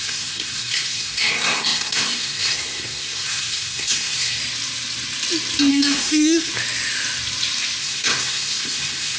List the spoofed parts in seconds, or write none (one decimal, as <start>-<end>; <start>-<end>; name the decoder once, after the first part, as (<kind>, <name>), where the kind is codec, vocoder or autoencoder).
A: 0.0-4.4 (codec, SNAC); 5.7-6.5; 7.8-9.2